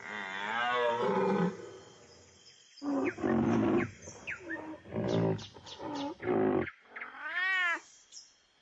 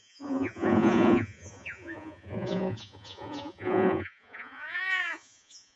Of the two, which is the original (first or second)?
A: first